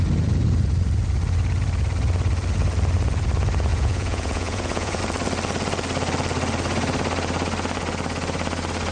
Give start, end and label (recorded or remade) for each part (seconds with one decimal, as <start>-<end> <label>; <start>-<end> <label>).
0.0-3.7 recorded; 3.7-5.0 remade; 5.0-8.9 recorded